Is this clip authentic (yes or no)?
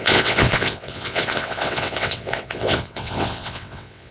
no